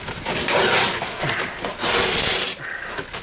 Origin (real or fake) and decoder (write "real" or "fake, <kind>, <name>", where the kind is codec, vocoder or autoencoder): real